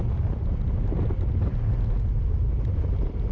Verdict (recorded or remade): recorded